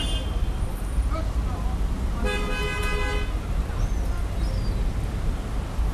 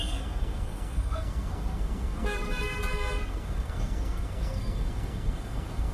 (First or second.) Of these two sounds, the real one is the first